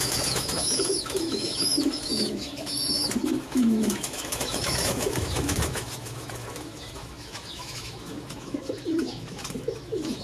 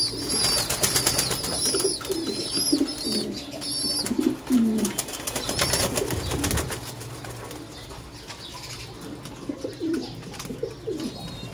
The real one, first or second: second